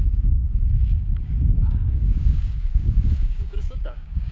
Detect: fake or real fake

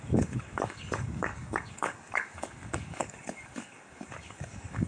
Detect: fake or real fake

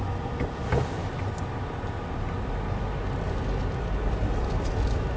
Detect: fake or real real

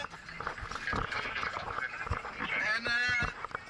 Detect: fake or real real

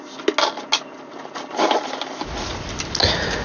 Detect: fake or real real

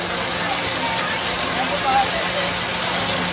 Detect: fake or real real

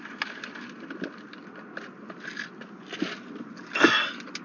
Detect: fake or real real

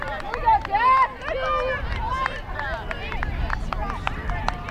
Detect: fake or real real